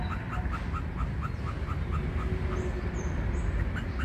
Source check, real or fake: real